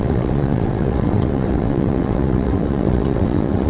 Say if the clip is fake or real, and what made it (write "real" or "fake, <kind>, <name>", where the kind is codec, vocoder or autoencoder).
fake, vocoder, WaveNeXt